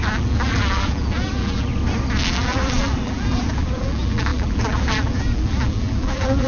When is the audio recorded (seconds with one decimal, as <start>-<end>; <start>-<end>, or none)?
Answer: 1.7-2.2